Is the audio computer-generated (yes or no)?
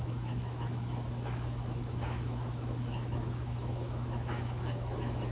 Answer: yes